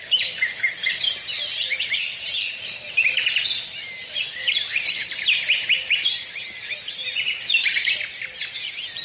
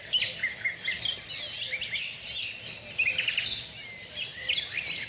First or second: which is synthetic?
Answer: first